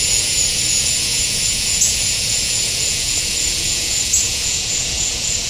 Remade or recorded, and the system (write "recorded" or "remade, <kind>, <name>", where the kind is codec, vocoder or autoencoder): remade, vocoder, Vocos